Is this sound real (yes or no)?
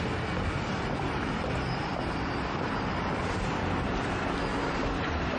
no